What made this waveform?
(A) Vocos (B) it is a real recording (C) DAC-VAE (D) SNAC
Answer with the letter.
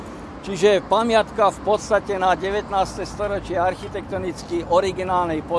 B